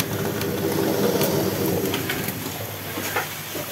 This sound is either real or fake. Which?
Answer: real